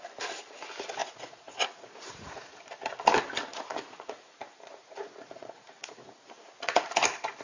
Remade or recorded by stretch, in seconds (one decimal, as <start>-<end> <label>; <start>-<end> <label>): 0.0-1.0 recorded; 1.0-2.6 remade; 2.6-3.5 recorded; 3.5-6.9 remade; 6.9-7.4 recorded